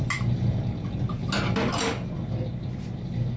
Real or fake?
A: real